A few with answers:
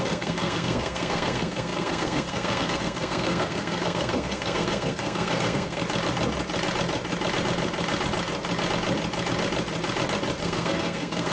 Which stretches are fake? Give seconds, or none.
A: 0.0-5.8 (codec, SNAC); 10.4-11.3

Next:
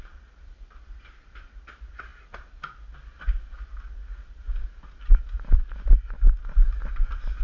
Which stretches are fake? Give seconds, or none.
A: none